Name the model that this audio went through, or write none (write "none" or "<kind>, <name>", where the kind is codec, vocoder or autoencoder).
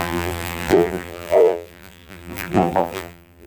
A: vocoder, BigVGAN v2